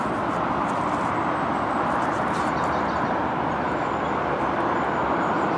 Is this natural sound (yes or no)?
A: yes